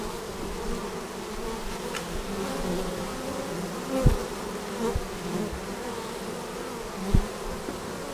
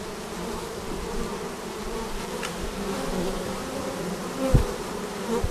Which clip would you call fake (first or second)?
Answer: second